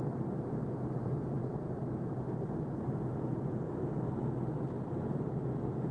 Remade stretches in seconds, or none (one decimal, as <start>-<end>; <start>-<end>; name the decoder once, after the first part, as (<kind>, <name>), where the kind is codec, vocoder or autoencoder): 1.4-2.5 (vocoder, BigVGAN v2); 3.1-3.7